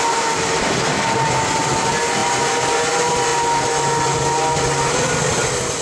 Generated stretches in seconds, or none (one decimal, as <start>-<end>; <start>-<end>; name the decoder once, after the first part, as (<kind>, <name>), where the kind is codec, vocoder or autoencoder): none